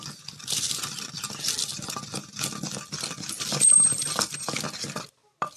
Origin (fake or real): real